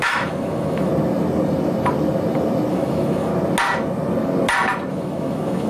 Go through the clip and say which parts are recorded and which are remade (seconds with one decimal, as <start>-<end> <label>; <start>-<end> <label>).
0.0-0.9 remade; 0.9-2.7 recorded; 2.7-3.3 remade; 3.3-4.9 recorded; 4.9-5.7 remade